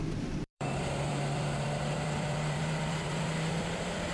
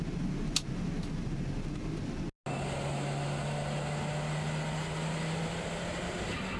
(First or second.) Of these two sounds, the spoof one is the first